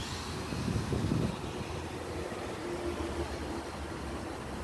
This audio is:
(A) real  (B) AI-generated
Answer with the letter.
A